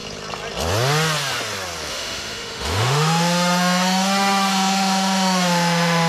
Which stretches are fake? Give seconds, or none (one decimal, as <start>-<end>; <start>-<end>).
1.9-6.1